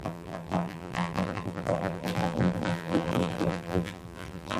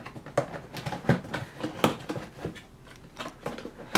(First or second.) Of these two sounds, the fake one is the first